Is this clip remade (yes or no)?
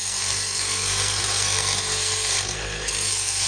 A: yes